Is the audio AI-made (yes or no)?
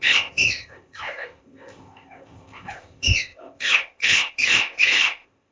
yes